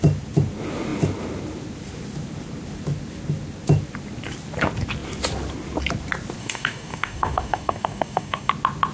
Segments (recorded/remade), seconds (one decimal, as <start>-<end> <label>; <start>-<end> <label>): 0.0-6.4 recorded; 6.4-8.5 remade; 8.5-8.9 recorded